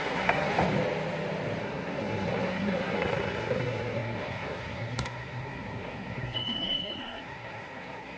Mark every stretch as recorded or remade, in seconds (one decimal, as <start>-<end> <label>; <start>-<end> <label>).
0.0-0.5 remade; 0.5-1.6 recorded; 1.6-8.2 remade

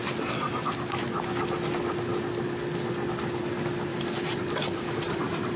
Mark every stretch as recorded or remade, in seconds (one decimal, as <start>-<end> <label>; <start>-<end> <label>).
0.0-3.9 recorded; 3.9-5.6 remade

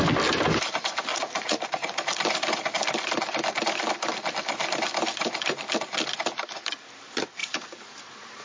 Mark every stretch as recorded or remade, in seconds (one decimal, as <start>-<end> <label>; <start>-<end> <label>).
0.0-1.1 recorded; 1.1-2.1 remade; 2.1-8.4 recorded

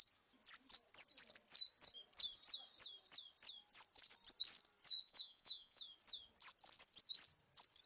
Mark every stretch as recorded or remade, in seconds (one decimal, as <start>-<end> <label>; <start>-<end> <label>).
0.0-4.9 recorded; 4.9-5.8 remade; 5.8-7.9 recorded

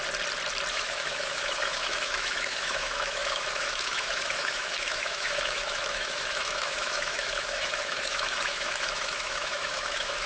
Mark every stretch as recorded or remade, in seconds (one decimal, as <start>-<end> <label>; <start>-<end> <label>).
0.0-0.7 recorded; 0.7-10.3 remade

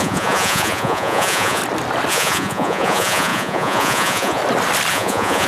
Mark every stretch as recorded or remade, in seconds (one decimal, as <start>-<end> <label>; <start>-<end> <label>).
0.0-1.6 remade; 1.6-2.1 recorded; 2.1-4.4 remade; 4.4-4.9 recorded; 4.9-5.5 remade

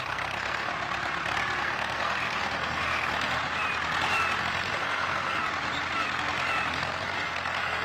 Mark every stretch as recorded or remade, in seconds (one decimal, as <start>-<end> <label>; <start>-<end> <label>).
0.0-0.7 remade; 0.7-1.6 recorded; 1.6-3.4 remade; 3.4-4.4 recorded; 4.4-5.4 remade; 5.4-6.7 recorded; 6.7-7.8 remade

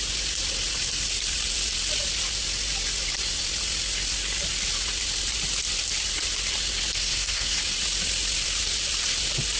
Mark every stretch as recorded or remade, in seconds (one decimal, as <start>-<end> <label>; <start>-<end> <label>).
0.0-7.0 recorded; 7.0-7.6 remade; 7.6-9.6 recorded